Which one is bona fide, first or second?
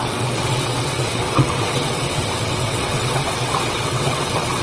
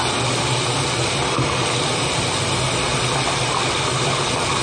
second